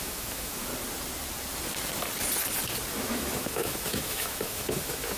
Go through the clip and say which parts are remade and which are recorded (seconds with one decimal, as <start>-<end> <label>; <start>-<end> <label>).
0.0-0.7 remade; 0.7-2.9 recorded; 2.9-5.2 remade